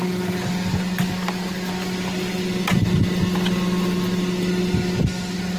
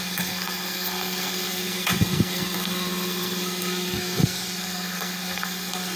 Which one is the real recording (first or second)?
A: first